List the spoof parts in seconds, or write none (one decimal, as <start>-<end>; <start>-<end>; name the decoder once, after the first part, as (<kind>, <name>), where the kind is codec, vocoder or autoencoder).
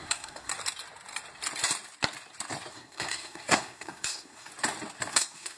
0.0-0.5 (codec, SNAC); 2.7-4.5; 5.1-5.6